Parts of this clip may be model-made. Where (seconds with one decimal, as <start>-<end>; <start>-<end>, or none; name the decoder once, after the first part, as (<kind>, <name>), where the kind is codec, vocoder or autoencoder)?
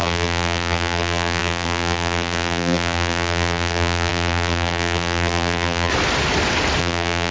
0.0-5.9 (vocoder, BigVGAN v2); 6.8-7.3